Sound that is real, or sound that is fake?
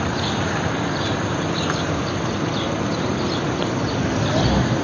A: real